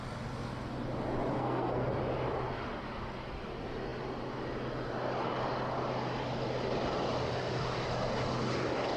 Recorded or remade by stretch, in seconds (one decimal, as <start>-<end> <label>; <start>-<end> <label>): 0.0-1.3 recorded; 1.3-1.9 remade; 1.9-9.0 recorded